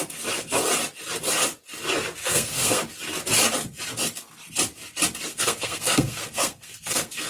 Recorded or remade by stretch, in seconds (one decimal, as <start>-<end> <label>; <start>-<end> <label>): 0.0-2.2 recorded; 2.2-2.8 remade; 2.8-5.3 recorded; 5.3-7.3 remade